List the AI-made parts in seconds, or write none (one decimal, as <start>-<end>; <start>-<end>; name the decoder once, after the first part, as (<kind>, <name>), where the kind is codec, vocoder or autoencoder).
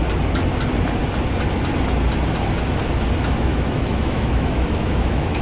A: 3.5-5.4 (autoencoder, DAC-VAE)